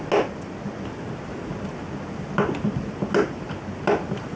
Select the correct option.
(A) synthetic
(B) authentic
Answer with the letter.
B